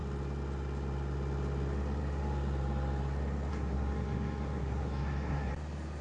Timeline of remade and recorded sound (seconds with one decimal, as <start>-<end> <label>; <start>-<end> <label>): 0.0-3.5 recorded; 3.5-5.5 remade; 5.5-6.0 recorded